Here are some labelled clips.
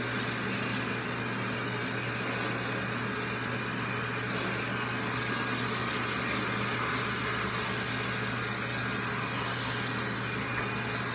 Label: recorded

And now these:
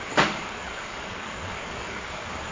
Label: remade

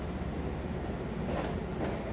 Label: recorded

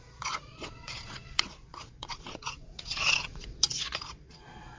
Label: remade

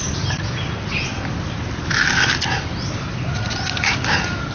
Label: recorded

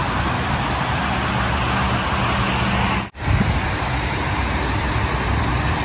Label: recorded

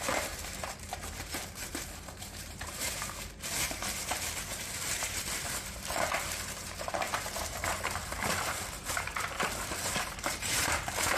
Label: remade